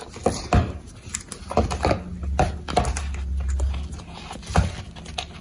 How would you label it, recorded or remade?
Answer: recorded